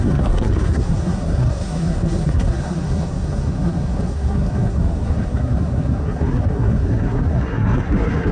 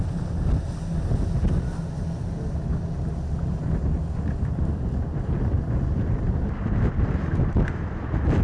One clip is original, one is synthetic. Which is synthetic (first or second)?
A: first